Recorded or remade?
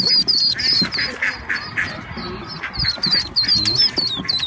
recorded